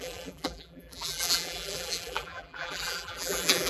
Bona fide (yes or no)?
no